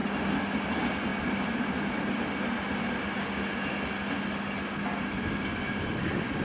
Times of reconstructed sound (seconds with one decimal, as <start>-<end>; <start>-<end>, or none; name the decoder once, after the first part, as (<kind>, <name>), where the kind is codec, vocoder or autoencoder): none